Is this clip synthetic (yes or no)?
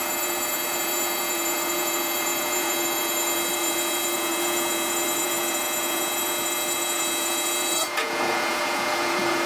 yes